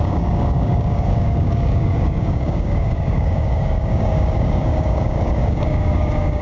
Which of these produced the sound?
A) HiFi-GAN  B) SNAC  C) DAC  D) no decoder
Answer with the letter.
C